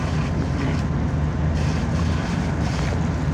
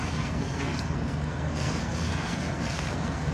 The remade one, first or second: second